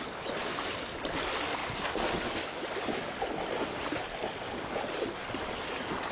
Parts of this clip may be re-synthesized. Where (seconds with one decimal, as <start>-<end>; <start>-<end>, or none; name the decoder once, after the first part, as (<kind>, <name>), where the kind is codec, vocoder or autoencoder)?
none